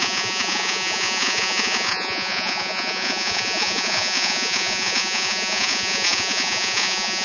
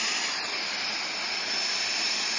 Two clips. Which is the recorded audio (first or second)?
second